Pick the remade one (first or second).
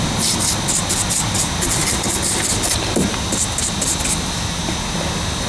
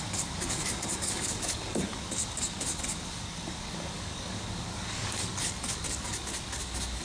second